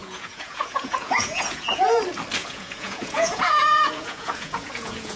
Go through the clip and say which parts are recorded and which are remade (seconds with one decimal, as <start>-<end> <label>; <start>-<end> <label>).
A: 0.0-2.0 remade; 2.0-2.4 recorded; 2.4-5.2 remade